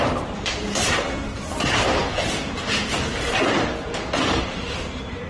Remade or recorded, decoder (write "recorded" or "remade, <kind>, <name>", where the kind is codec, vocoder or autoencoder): remade, vocoder, BigVGAN v2